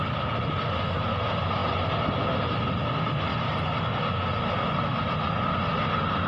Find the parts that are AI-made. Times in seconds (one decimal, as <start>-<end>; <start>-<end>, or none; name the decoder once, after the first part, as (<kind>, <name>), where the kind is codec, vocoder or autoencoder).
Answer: none